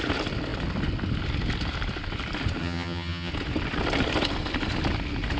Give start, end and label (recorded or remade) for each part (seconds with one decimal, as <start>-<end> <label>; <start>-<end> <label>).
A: 0.0-2.6 recorded; 2.6-3.3 remade; 3.3-5.4 recorded